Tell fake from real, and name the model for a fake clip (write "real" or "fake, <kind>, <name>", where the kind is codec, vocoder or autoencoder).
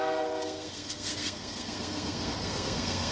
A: fake, codec, SNAC